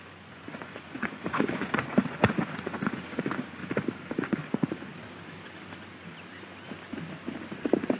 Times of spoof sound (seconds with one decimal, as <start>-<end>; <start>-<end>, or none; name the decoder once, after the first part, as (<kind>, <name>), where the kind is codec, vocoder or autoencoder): 0.0-3.6 (vocoder, Vocos); 4.2-4.9